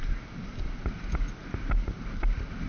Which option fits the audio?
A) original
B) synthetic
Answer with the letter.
A